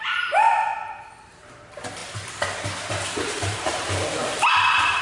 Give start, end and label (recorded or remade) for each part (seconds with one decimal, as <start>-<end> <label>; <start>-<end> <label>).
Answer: 0.0-0.5 remade; 0.5-1.3 recorded; 1.3-2.0 remade; 2.0-2.8 recorded; 2.8-5.0 remade